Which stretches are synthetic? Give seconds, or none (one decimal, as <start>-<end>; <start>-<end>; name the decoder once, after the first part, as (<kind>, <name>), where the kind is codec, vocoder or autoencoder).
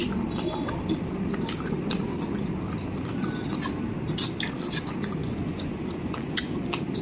5.2-6.6 (vocoder, Vocos)